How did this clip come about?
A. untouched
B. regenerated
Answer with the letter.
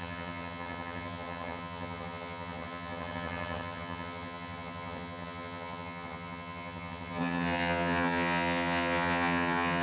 B